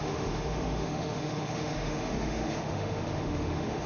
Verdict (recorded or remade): remade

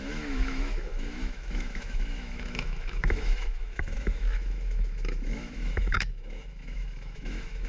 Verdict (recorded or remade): remade